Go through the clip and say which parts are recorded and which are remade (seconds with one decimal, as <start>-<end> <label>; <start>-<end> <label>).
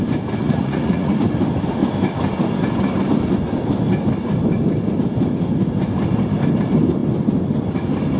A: 0.0-0.4 recorded; 0.4-1.2 remade; 1.2-8.2 recorded